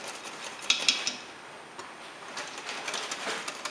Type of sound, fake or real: real